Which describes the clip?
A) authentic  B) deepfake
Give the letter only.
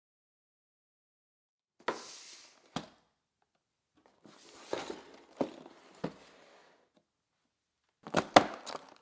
A